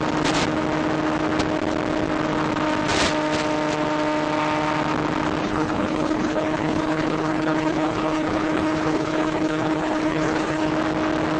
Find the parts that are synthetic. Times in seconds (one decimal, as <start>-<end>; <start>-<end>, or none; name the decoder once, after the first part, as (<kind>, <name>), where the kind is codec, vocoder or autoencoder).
5.4-10.7 (codec, HILCodec)